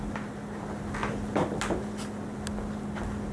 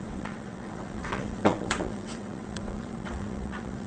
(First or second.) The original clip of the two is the first